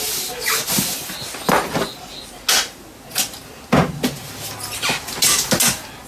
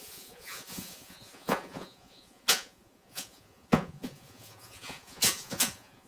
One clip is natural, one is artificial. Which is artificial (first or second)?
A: second